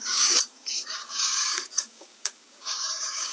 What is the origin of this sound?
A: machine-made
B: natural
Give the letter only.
A